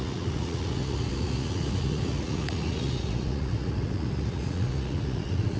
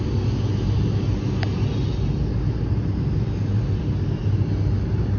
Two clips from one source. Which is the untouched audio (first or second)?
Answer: second